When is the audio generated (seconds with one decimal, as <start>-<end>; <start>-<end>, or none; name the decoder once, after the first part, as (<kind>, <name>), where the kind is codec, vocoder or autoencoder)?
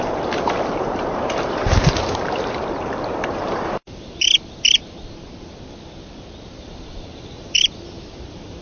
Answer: 0.0-4.3 (vocoder, BigVGAN v2); 6.6-8.6